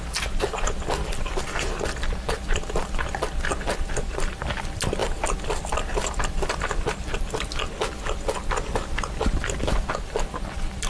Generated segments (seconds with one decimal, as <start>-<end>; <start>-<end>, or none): none